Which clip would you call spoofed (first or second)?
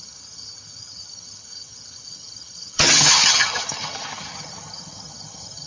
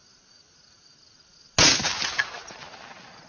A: first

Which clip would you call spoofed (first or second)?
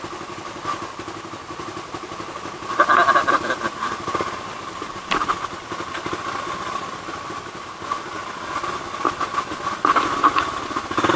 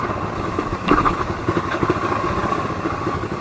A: second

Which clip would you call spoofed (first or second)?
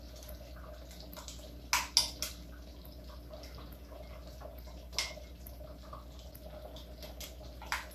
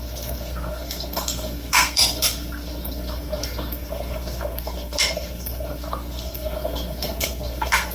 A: second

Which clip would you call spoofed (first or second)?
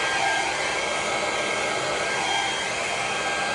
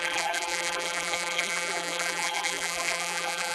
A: second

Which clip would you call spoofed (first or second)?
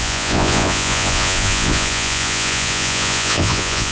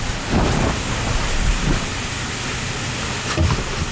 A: first